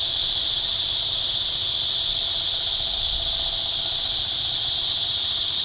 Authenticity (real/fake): real